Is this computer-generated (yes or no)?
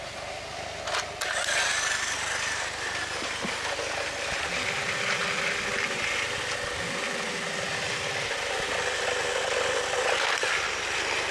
no